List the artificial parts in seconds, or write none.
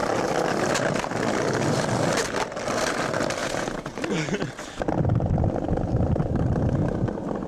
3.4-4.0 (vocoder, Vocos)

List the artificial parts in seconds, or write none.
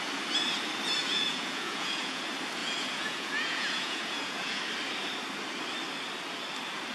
1.0-2.2 (vocoder, Vocos); 2.6-4.6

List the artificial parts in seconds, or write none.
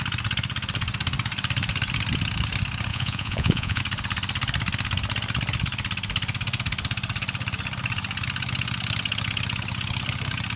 2.9-3.8 (vocoder, Vocos)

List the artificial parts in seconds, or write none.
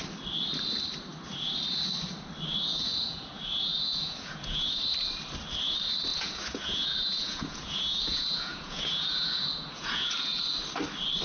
2.7-4.8 (vocoder, Vocos); 6.1-10.4